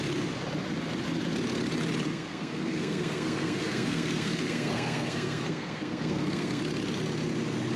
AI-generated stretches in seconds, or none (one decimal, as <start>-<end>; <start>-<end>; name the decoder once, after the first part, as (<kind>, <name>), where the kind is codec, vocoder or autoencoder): 2.1-6.6 (codec, SNAC)